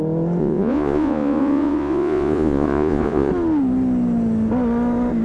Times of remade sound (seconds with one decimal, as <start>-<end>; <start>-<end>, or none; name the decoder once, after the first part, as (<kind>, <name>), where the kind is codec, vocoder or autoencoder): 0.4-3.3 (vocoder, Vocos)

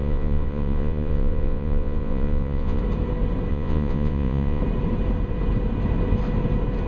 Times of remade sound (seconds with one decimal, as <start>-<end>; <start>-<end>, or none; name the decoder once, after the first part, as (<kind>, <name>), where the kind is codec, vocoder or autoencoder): 0.0-2.8 (vocoder, Vocos); 3.5-4.6

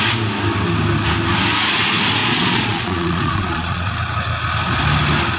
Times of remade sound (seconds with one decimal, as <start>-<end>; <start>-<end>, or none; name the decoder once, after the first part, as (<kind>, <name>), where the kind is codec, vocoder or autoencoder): 2.2-3.9 (vocoder, Vocos)

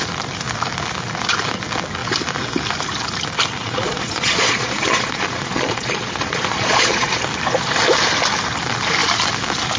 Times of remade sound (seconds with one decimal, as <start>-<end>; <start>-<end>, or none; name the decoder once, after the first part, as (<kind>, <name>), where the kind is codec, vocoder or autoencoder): 3.6-7.1 (vocoder, Vocos)

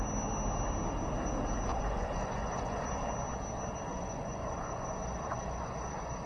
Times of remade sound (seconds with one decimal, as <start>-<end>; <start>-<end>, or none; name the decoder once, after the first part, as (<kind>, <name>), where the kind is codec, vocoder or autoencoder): 1.7-3.0 (vocoder, Vocos); 3.9-6.3

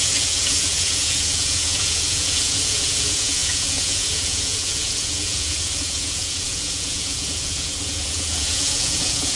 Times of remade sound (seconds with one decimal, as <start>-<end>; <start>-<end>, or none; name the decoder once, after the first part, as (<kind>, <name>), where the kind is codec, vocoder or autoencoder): 0.0-9.4 (vocoder, Vocos)

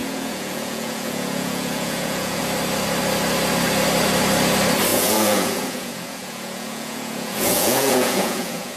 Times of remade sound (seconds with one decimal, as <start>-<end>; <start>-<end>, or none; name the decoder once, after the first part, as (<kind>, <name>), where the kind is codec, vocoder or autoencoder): 0.0-2.4 (vocoder, Vocos); 4.9-8.8

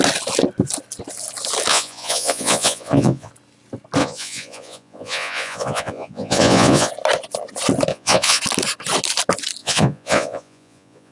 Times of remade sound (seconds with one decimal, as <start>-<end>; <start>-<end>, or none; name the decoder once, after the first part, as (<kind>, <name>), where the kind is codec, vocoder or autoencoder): 1.7-3.3 (vocoder, Vocos); 4.0-6.9; 7.9-8.4; 9.6-11.1